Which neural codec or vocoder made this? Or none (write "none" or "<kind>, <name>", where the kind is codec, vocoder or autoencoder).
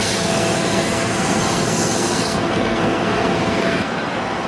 codec, SNAC